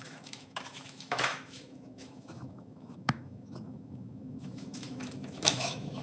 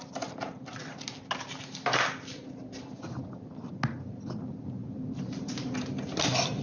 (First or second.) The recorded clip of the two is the second